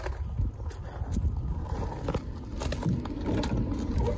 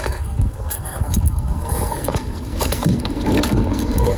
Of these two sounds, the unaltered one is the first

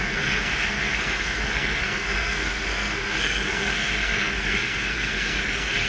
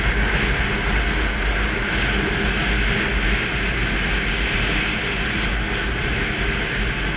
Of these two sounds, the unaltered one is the second